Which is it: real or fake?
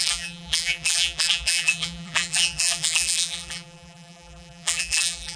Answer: fake